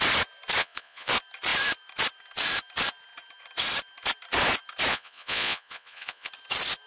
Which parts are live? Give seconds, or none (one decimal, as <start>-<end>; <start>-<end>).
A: 0.0-0.6; 1.1-4.9; 6.3-6.9